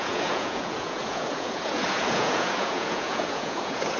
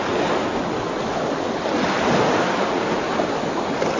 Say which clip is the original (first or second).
second